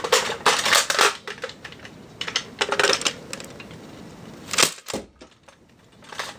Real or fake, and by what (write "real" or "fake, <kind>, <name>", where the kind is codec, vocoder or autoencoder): real